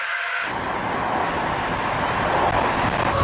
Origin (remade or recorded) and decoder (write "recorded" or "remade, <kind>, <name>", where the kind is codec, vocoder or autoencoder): recorded